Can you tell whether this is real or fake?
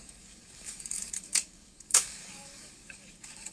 fake